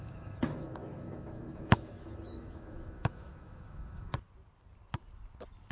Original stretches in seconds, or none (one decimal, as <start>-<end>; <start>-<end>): 4.1-5.7